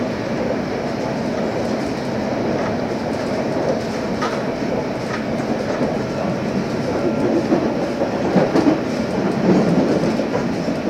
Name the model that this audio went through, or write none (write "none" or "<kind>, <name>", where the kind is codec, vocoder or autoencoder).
none